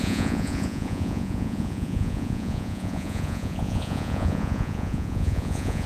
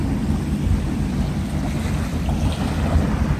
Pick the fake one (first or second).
first